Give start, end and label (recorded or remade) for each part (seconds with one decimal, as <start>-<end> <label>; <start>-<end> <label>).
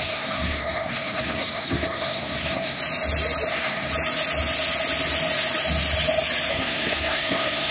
0.0-2.8 remade; 2.8-3.5 recorded; 3.5-3.9 remade; 3.9-6.5 recorded; 6.5-7.7 remade